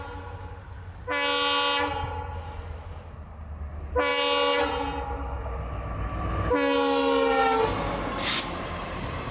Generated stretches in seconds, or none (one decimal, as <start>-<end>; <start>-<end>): none